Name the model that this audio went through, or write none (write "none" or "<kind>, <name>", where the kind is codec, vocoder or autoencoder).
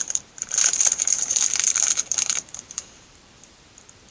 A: vocoder, BigVGAN v2